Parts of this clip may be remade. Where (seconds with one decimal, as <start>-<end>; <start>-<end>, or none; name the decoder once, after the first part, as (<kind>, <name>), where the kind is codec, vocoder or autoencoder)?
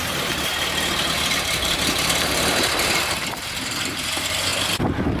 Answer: 0.0-4.5 (vocoder, BigVGAN v2)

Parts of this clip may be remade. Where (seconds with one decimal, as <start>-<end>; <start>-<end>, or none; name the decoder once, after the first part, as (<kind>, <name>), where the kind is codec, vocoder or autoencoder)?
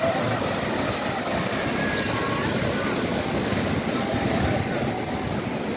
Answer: 3.1-3.7 (codec, DAC)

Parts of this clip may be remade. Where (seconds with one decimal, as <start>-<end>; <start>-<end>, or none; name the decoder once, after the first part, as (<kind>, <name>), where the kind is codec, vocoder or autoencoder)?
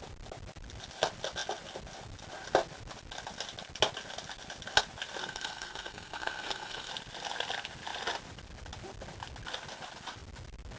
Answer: 5.2-6.9 (codec, SNAC)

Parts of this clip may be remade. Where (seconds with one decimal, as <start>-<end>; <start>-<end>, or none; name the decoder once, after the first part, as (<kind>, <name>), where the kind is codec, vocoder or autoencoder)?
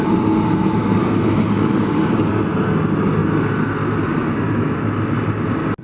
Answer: 0.8-2.3 (codec, DAC)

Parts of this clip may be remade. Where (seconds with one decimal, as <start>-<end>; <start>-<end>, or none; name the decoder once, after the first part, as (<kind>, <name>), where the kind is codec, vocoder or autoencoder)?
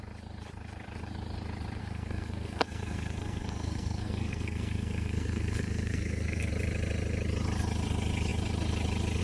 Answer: 1.8-6.5 (codec, SNAC)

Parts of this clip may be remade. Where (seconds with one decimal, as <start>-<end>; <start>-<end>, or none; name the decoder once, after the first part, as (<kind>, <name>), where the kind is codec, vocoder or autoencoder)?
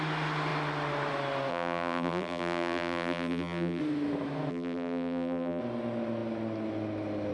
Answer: 1.5-3.8 (vocoder, BigVGAN v2); 4.5-5.6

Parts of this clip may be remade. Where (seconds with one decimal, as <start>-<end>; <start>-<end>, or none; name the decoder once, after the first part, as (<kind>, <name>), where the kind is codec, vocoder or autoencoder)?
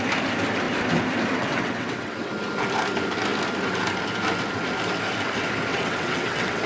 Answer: 1.4-2.3 (vocoder, WaveNeXt); 5.7-6.7